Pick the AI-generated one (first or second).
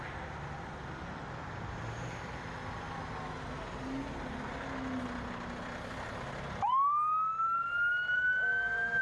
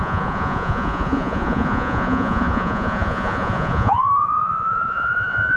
second